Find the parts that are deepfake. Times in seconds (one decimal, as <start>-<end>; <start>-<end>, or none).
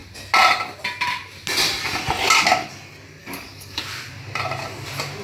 3.2-3.8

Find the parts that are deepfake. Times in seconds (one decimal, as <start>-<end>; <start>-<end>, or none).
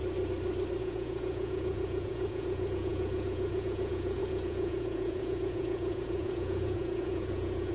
0.8-7.7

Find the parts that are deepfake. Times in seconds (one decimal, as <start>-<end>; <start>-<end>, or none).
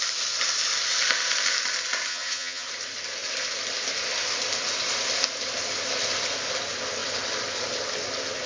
2.1-2.7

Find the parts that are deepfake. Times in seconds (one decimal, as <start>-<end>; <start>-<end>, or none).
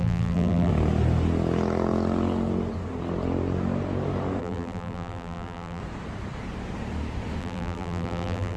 0.0-0.7; 4.4-5.8; 7.4-8.6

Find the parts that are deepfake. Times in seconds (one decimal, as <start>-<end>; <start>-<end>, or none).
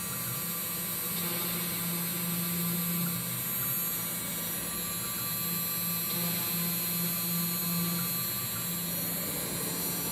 none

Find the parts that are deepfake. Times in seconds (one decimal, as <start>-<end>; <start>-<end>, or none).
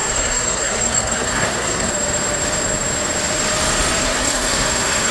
0.0-1.9; 4.0-5.1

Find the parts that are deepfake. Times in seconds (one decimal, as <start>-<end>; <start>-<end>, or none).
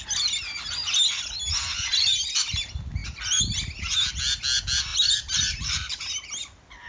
4.9-6.0